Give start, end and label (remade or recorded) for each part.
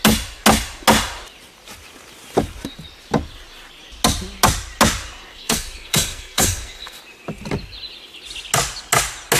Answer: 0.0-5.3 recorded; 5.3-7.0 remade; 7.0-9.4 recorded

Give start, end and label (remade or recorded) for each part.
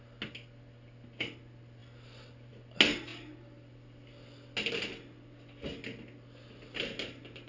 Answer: 0.0-7.5 recorded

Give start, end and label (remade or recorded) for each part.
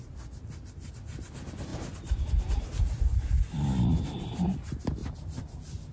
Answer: 0.0-5.9 recorded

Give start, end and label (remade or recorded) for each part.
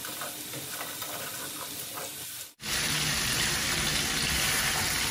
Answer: 0.0-5.1 recorded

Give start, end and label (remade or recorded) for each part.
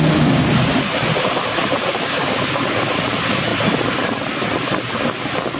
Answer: 0.0-1.9 recorded; 1.9-2.9 remade; 2.9-5.6 recorded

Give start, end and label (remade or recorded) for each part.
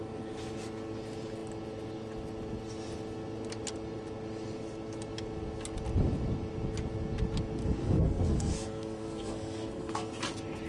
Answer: 0.0-7.6 recorded; 7.6-10.1 remade; 10.1-10.7 recorded